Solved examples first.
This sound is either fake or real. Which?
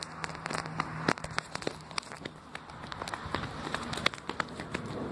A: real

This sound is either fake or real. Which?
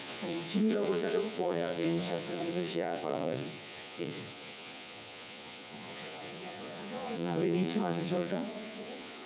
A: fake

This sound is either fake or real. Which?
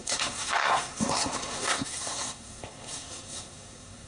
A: fake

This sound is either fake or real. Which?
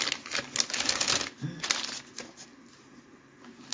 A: real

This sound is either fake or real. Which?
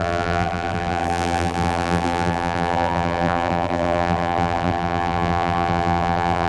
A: fake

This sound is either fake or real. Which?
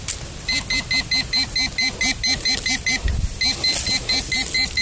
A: real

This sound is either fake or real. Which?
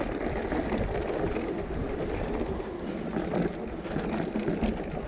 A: real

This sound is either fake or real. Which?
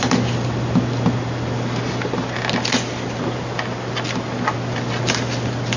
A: real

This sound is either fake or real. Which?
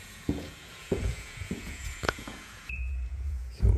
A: fake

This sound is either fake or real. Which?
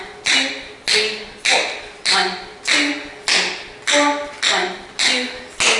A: real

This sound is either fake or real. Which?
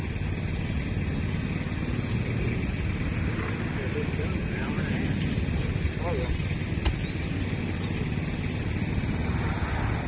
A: real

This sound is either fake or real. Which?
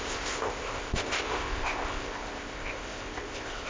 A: fake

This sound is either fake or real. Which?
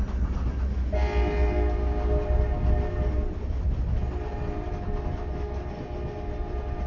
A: real